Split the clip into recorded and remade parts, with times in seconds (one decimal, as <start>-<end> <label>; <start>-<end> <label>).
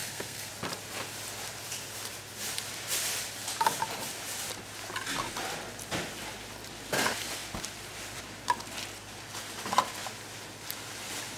0.0-0.5 remade; 0.5-11.4 recorded